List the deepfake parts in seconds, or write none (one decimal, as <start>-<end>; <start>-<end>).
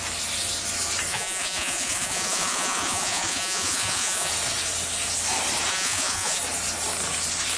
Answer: 1.1-4.3; 5.7-6.4